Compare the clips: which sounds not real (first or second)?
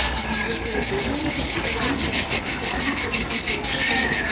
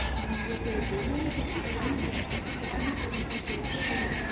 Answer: first